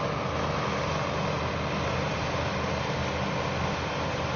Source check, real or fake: real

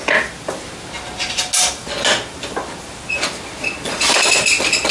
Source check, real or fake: real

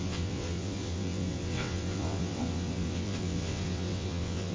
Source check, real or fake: fake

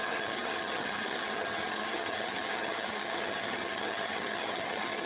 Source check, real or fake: fake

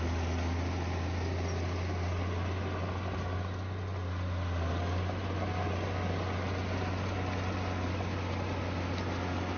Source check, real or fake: real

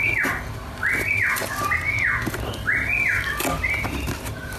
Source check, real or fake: real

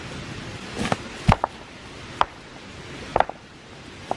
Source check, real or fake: real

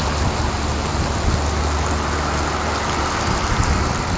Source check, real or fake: real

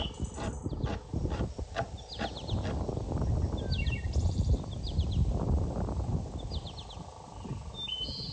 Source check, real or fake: real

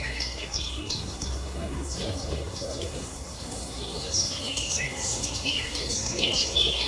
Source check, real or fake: fake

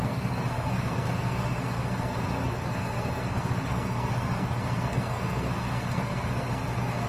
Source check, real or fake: fake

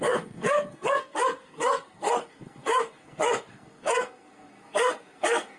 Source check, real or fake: fake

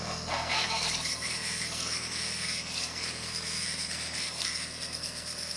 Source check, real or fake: fake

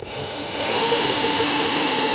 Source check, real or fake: fake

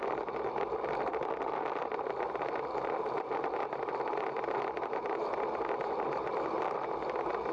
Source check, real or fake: real